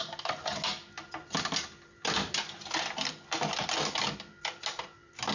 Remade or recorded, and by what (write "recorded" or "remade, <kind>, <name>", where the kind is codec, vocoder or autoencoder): recorded